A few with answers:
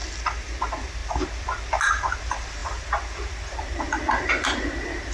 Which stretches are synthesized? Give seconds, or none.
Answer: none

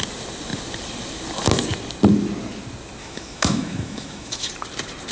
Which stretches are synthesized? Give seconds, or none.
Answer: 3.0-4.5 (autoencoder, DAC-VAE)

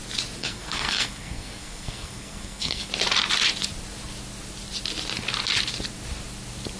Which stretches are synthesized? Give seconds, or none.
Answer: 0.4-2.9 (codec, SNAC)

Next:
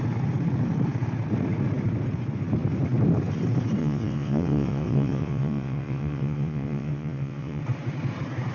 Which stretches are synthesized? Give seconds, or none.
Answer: 3.8-7.6 (vocoder, WaveNeXt)

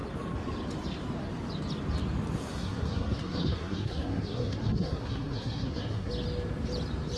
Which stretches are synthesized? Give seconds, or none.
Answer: 2.5-6.1 (codec, SNAC)